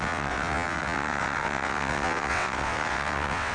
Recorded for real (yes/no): no